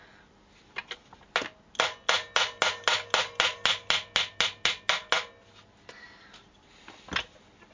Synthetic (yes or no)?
no